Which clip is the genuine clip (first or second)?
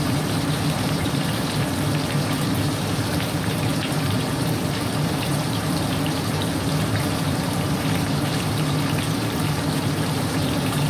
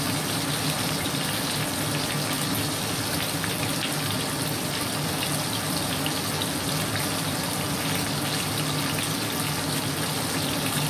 second